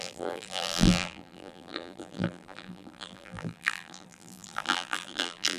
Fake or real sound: fake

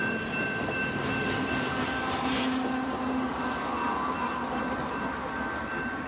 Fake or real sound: fake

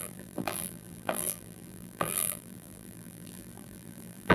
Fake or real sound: fake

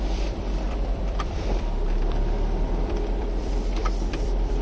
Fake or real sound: fake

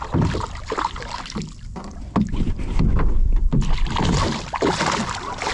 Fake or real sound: fake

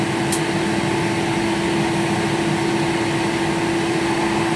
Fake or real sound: fake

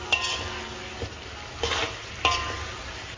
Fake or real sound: real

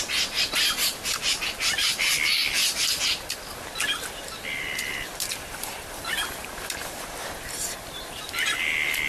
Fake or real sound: real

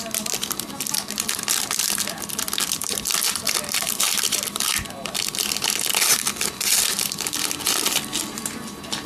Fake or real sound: real